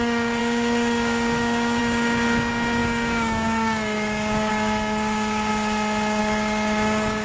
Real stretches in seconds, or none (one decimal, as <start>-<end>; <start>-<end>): 5.5-6.2